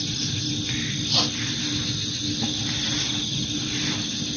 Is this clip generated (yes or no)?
no